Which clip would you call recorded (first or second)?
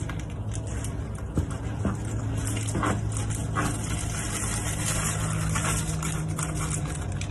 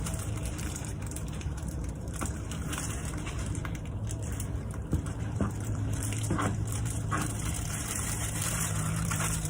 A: first